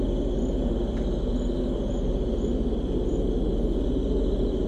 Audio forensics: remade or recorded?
recorded